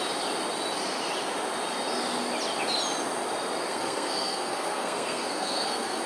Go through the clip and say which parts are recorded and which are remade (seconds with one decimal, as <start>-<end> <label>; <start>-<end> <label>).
0.0-3.7 recorded; 3.7-6.1 remade